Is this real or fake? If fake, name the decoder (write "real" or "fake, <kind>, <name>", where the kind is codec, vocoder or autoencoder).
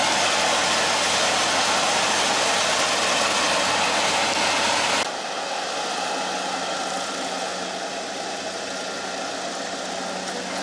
real